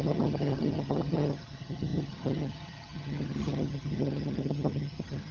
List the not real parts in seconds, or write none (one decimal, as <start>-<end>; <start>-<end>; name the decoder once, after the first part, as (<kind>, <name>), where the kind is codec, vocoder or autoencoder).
0.0-5.3 (vocoder, HiFi-GAN)